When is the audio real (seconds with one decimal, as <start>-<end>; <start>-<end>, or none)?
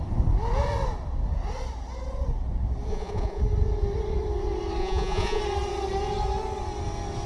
0.0-2.9; 3.4-4.8; 5.4-7.3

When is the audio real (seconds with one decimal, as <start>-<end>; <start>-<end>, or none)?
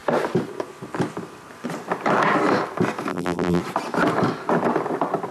0.0-3.1; 3.6-5.3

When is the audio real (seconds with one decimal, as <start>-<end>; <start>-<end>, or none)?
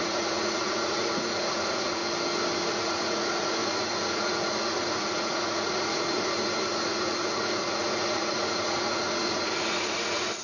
2.0-2.7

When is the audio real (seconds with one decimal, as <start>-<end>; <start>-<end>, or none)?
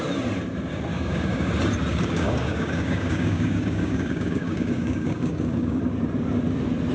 0.0-0.9; 1.5-1.9; 5.8-6.9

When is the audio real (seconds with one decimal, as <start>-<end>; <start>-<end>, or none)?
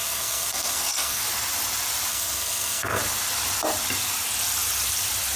1.2-2.1; 3.0-5.4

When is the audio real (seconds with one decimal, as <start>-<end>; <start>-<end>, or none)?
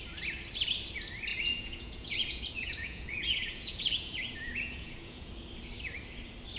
0.0-1.3; 5.3-6.6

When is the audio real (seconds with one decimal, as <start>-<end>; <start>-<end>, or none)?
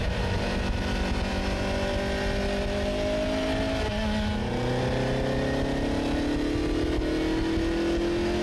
0.0-8.4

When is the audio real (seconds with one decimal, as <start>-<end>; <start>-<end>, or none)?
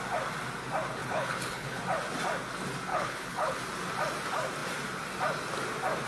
0.0-1.0; 1.8-2.9; 3.6-6.1